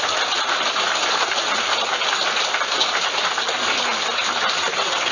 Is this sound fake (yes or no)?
no